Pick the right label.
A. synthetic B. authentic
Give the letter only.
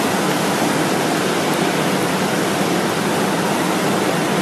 B